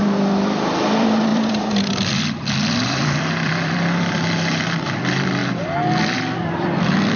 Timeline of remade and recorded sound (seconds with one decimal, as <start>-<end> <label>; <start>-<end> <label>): 0.0-5.4 remade; 5.4-6.0 recorded; 6.0-7.2 remade